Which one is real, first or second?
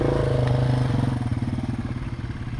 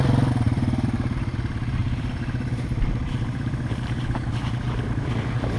first